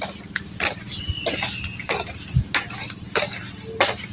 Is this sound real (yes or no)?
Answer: yes